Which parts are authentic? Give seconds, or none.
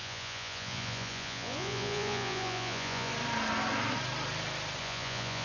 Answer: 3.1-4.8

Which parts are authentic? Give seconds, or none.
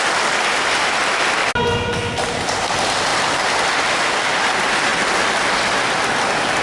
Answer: 0.0-6.6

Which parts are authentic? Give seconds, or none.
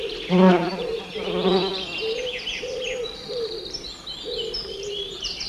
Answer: 1.6-4.9